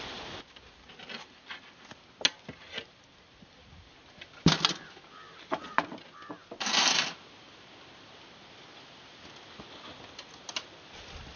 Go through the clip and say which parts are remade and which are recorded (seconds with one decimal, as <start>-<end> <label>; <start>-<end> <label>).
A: 0.0-11.4 recorded